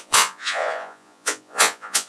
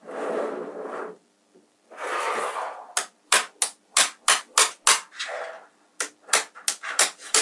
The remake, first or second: first